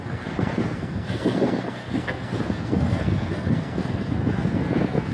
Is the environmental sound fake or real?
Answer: fake